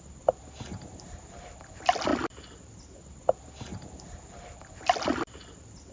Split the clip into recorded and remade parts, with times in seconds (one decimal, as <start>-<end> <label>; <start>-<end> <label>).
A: 0.0-0.9 recorded; 0.9-1.5 remade; 1.5-5.9 recorded